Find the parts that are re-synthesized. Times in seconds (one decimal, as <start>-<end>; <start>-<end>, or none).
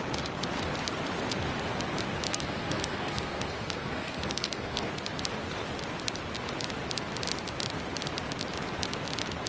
2.3-4.9